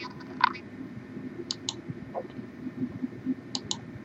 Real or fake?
real